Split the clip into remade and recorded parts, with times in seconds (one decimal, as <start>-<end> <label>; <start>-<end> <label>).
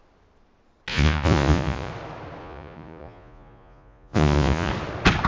0.0-0.9 recorded; 0.9-1.9 remade; 1.9-2.4 recorded; 2.4-4.7 remade; 4.7-5.3 recorded